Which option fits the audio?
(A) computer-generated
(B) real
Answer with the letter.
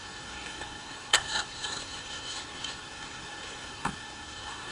A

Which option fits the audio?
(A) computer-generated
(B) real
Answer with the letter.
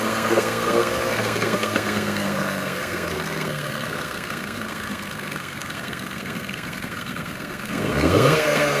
A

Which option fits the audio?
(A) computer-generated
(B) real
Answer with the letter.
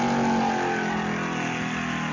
B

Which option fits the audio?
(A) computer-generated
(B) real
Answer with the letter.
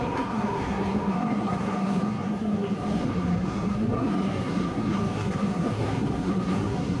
A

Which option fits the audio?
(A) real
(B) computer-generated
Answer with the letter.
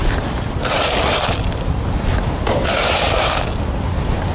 A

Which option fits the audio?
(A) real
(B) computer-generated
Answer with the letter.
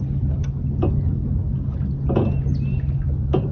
A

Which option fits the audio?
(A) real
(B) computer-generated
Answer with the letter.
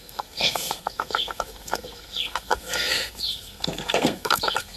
B